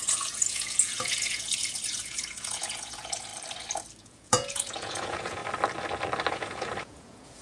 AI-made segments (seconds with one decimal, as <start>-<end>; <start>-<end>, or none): 0.0-3.3; 4.0-5.4; 6.3-7.4

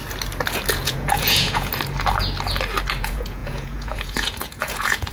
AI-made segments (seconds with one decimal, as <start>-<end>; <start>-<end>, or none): 0.7-1.7; 3.0-5.1

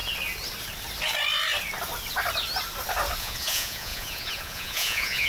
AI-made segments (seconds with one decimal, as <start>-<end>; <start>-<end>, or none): 3.2-5.3

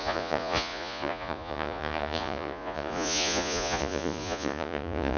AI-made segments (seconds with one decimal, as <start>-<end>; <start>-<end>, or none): 0.0-5.2

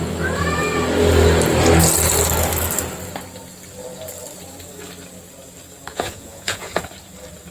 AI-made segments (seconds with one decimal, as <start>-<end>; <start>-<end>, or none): 5.9-6.8

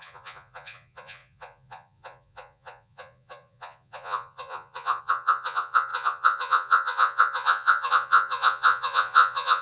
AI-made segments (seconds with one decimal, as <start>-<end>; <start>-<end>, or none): 0.0-9.6

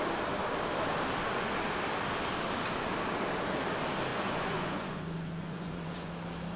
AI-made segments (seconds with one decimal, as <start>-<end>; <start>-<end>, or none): 4.1-6.1